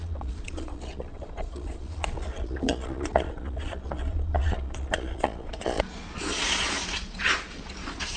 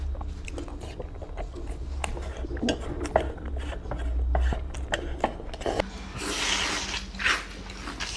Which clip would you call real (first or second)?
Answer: second